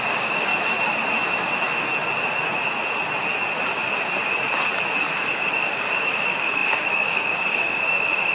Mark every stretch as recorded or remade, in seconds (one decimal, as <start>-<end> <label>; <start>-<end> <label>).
0.0-0.5 remade; 0.5-5.5 recorded; 5.5-8.3 remade